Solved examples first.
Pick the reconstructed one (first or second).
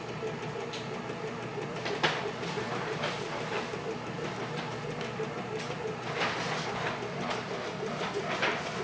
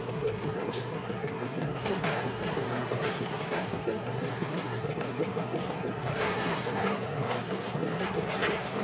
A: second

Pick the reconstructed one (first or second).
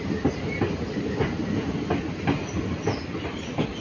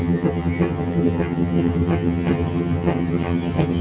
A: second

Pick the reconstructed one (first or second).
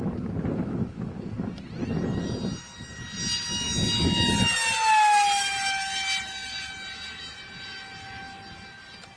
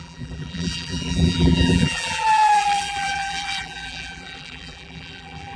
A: second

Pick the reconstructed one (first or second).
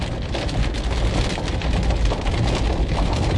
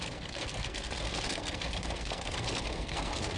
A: second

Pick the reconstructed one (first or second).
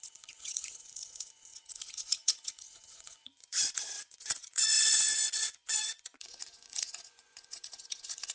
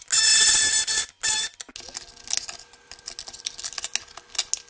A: first